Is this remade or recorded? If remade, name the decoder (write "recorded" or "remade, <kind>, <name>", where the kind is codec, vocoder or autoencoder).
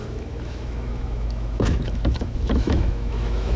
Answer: remade, autoencoder, DAC-VAE